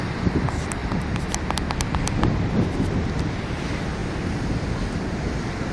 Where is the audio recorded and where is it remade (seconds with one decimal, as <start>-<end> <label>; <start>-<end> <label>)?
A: 0.0-5.7 recorded